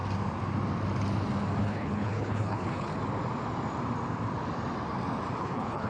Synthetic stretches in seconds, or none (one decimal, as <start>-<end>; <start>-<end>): 1.6-2.9; 5.4-5.9